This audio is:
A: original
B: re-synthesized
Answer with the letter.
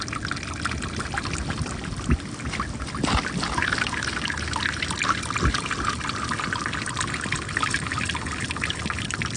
A